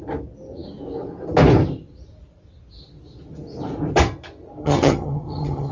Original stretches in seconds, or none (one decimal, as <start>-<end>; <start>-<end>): 0.0-4.6